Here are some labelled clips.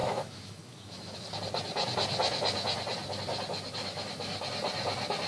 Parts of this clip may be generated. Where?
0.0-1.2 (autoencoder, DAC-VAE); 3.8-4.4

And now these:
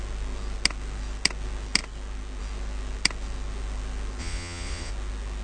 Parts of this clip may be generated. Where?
4.2-4.9 (vocoder, Vocos)

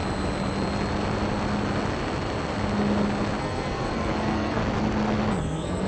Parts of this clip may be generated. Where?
3.4-4.6 (codec, SNAC); 5.4-5.9

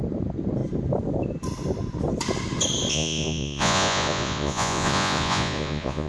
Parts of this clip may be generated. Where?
2.9-6.1 (vocoder, Vocos)